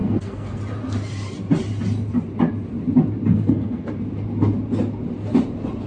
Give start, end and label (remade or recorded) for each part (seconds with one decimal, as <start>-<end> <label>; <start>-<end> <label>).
0.0-0.6 remade; 0.6-3.3 recorded; 3.3-3.9 remade; 3.9-5.9 recorded